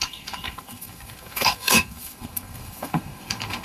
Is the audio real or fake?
fake